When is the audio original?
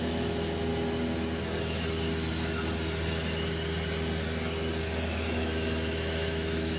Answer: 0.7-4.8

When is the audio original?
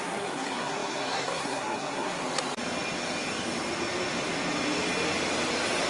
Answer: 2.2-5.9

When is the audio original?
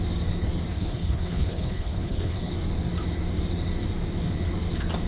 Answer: 0.0-0.7; 2.5-5.1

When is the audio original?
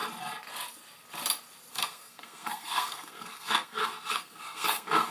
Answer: 0.0-1.7